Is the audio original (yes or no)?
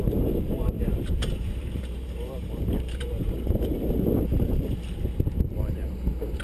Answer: no